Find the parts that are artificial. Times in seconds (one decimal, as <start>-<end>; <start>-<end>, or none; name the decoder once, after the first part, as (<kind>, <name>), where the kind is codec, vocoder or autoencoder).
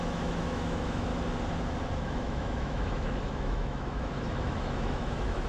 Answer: 0.0-1.1 (autoencoder, DAC-VAE); 2.0-5.5